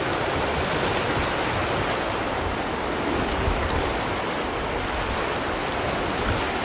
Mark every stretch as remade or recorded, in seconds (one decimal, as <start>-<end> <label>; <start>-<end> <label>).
0.0-1.6 recorded; 1.6-3.9 remade; 3.9-6.6 recorded